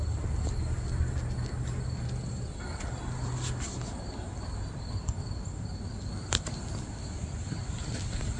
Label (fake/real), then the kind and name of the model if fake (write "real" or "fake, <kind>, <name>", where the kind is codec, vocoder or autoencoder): real